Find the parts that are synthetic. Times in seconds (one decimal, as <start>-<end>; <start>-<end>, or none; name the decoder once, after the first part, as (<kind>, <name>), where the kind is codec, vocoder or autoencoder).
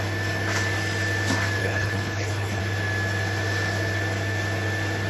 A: 1.6-2.6 (codec, HILCodec)